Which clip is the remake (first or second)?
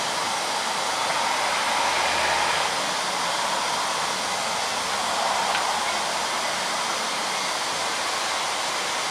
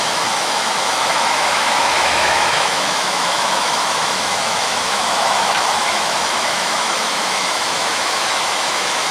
second